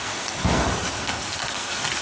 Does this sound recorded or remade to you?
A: remade